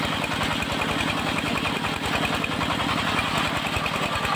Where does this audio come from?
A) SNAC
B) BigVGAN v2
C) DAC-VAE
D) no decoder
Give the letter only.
D